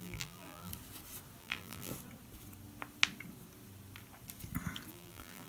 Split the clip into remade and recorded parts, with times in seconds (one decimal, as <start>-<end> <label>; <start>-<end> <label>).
0.0-0.7 remade; 0.7-1.4 recorded; 1.4-1.9 remade; 1.9-4.9 recorded; 4.9-5.5 remade